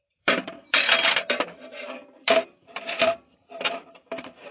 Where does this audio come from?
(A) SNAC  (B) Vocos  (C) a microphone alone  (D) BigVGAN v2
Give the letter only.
D